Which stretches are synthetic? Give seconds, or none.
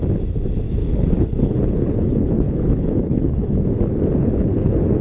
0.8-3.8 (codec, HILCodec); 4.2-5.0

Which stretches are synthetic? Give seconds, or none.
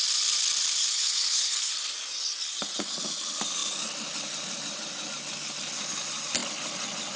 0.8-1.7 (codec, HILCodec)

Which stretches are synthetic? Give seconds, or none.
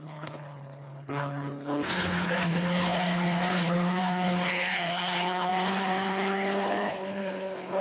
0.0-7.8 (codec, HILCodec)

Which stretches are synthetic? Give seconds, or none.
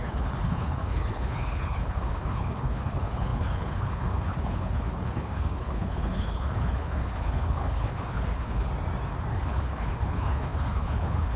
0.0-8.7 (codec, HILCodec); 9.3-11.4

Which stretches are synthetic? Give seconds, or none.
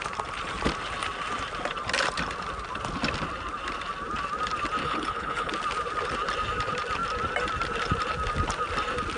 4.8-5.5 (codec, HILCodec)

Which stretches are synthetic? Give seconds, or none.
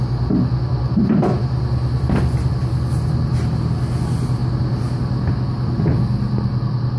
none